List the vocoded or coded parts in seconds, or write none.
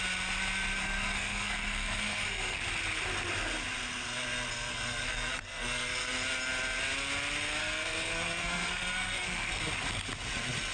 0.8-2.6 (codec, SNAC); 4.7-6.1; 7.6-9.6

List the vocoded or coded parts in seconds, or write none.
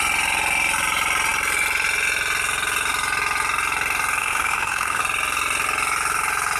4.2-5.0 (autoencoder, DAC-VAE)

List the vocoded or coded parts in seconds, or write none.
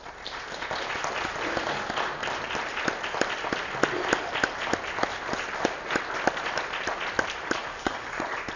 7.7-8.2 (codec, DAC)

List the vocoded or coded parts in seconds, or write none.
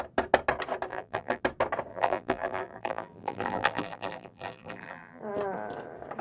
0.9-1.4 (vocoder, BigVGAN v2); 1.9-5.2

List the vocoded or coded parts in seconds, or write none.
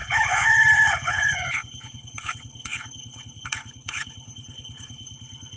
0.0-5.6 (codec, HILCodec)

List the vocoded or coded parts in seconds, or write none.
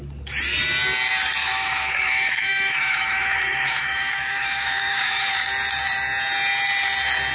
1.4-5.3 (autoencoder, DAC-VAE)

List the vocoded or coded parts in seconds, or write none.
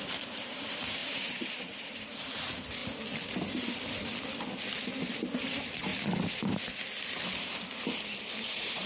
0.0-2.8 (vocoder, BigVGAN v2); 5.4-5.9; 8.5-8.9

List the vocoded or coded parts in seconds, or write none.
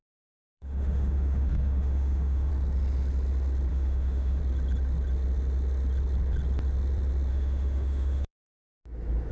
0.5-2.5 (autoencoder, DAC-VAE); 3.7-4.4; 7.3-8.7